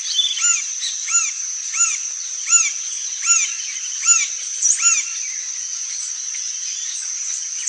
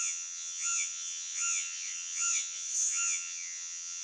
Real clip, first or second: first